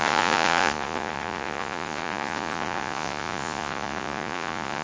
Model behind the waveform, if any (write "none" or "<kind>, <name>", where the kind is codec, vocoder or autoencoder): vocoder, Vocos